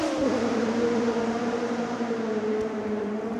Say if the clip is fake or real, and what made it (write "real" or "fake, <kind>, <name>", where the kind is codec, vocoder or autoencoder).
fake, vocoder, BigVGAN v2